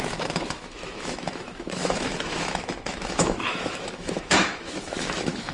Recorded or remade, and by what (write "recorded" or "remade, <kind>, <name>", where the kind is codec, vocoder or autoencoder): remade, autoencoder, DAC-VAE